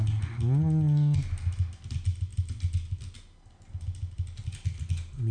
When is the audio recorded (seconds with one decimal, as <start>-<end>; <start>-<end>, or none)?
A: 0.0-5.3